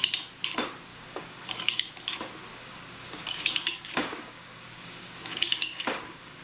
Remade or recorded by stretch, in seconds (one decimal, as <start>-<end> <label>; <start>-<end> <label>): 0.0-0.9 recorded; 0.9-1.9 remade; 1.9-2.5 recorded; 2.5-6.4 remade